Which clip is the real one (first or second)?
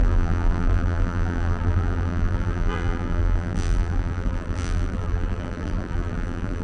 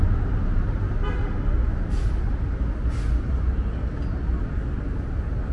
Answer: second